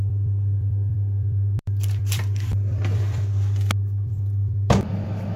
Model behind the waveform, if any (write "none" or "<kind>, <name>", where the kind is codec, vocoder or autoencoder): vocoder, BigVGAN v2